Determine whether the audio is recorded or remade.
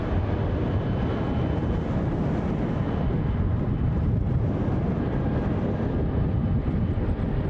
recorded